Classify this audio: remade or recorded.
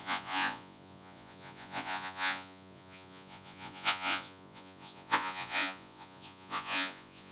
remade